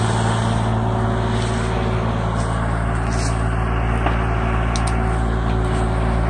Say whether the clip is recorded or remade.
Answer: recorded